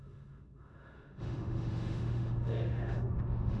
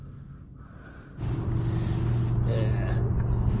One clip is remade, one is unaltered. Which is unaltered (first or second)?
second